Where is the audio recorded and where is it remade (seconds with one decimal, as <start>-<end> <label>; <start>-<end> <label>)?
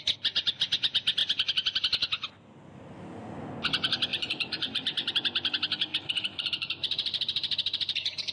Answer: 0.0-4.1 recorded; 4.1-5.1 remade; 5.1-5.9 recorded; 5.9-8.3 remade